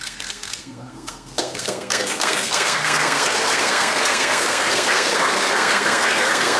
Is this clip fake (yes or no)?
yes